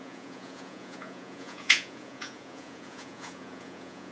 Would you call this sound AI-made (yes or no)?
yes